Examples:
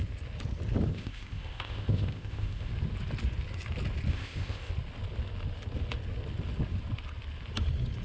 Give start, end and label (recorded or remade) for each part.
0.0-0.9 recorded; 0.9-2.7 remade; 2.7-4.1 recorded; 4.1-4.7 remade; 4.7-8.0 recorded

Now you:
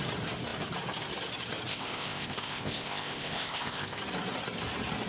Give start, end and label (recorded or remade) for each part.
0.0-1.7 recorded; 1.7-4.0 remade; 4.0-5.1 recorded

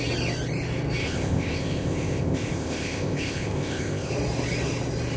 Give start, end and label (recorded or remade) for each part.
0.0-1.0 recorded; 1.0-4.1 remade; 4.1-5.2 recorded

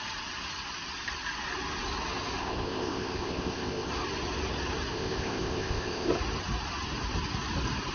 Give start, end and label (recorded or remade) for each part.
0.0-2.4 recorded; 2.4-3.9 remade; 3.9-4.9 recorded; 4.9-6.1 remade; 6.1-7.9 recorded